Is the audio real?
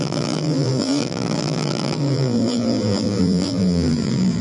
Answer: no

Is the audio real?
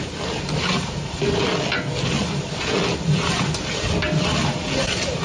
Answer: yes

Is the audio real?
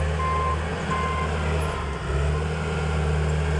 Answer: yes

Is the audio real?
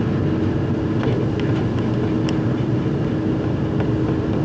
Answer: yes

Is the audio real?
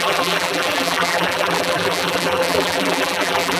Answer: no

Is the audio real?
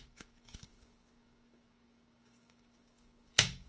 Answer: no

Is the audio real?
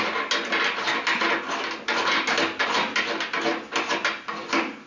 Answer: yes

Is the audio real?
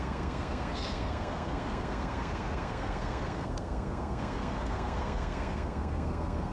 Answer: no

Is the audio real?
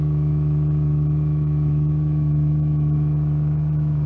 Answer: no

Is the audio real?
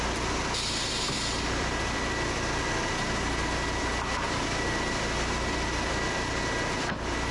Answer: no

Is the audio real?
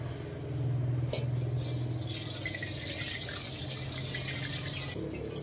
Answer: yes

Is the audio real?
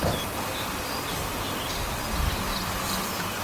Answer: yes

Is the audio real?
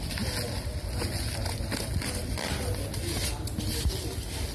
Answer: yes